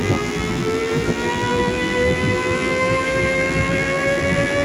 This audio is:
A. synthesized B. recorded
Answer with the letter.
A